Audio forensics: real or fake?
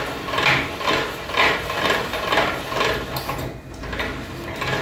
real